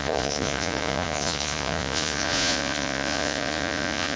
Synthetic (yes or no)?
yes